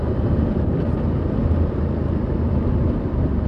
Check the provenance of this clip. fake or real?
real